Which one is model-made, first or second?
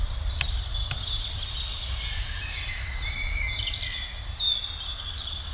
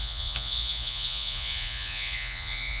second